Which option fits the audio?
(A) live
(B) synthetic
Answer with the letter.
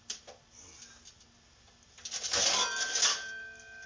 A